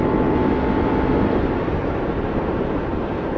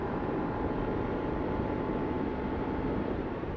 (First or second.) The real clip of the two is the first